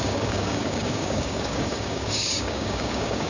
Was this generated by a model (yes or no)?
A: yes